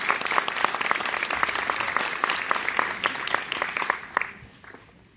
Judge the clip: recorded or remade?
recorded